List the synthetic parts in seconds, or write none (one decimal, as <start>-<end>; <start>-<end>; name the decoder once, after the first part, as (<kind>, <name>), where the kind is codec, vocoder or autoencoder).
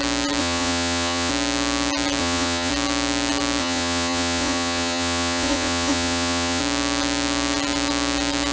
0.4-1.3 (vocoder, Vocos); 2.2-2.7; 3.6-6.6